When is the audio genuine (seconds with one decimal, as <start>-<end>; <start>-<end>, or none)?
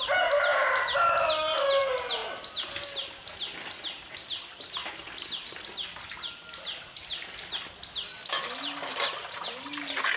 0.0-10.2